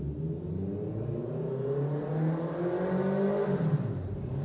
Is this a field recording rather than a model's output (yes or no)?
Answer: yes